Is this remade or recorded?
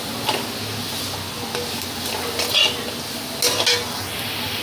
recorded